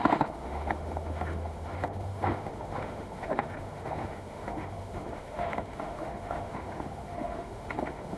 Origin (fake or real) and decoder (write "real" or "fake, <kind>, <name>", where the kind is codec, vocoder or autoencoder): fake, autoencoder, DAC-VAE